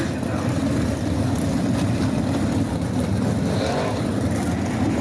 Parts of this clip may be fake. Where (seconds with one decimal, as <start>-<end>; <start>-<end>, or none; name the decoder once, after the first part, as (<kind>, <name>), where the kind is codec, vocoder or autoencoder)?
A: 0.6-3.6 (vocoder, BigVGAN v2)